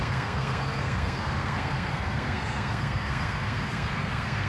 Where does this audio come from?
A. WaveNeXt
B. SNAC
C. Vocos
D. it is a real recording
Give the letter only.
B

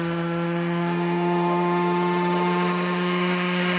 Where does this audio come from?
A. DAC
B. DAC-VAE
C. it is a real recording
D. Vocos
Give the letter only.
B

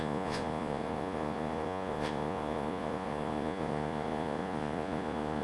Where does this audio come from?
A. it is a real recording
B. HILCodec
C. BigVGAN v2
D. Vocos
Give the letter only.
D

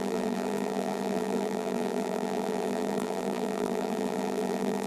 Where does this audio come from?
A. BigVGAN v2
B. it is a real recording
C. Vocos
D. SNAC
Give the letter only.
A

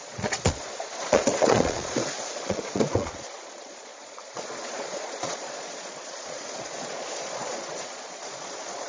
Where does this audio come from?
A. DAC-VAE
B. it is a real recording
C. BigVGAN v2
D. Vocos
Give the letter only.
D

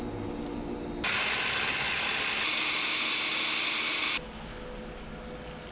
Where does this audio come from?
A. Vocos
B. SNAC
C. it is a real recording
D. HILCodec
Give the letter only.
C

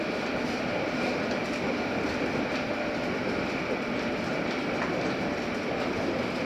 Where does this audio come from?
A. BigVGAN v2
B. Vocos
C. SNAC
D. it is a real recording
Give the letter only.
D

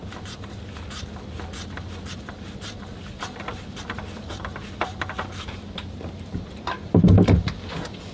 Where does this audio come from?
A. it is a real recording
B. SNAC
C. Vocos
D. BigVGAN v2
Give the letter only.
D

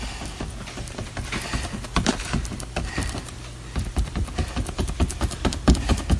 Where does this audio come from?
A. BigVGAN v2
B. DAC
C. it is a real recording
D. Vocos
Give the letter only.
C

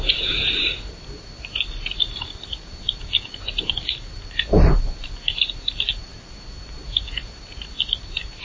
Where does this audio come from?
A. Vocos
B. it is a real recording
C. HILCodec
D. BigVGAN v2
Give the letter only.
D